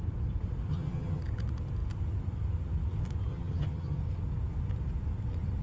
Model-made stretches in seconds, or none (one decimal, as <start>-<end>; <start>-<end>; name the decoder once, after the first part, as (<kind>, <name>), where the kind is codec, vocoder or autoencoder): 0.7-1.2 (vocoder, HiFi-GAN); 3.3-4.0